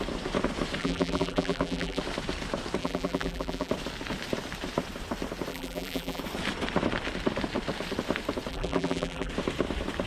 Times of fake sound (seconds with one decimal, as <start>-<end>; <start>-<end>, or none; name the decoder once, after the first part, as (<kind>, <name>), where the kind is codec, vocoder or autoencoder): 0.8-2.0 (vocoder, BigVGAN v2); 2.8-3.7; 5.5-6.2; 8.5-9.3